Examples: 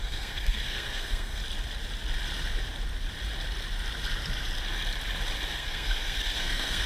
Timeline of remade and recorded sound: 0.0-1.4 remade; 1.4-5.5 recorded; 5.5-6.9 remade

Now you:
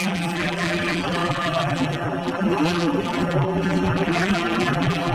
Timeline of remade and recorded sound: 0.0-5.1 remade